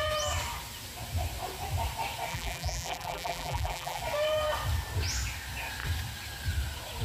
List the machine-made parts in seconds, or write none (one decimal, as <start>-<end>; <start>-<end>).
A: 2.3-4.0